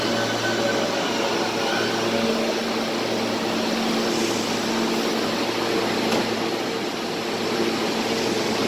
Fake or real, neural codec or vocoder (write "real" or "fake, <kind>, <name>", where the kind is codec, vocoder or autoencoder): real